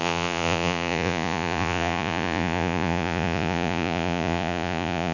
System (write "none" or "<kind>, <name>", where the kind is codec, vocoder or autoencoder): vocoder, Vocos